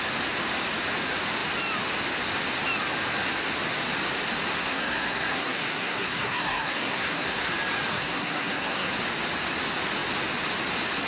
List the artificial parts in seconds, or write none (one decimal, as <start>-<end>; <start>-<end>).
4.5-7.5; 7.9-8.9